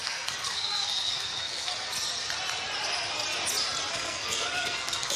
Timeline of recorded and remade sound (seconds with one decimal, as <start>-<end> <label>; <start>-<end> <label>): 0.0-1.7 remade; 1.7-3.9 recorded; 3.9-5.2 remade